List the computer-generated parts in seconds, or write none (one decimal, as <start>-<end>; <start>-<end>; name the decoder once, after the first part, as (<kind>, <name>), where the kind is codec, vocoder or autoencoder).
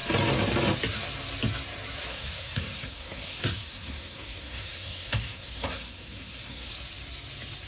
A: 2.1-6.7 (codec, SNAC)